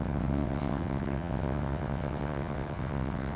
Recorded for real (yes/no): no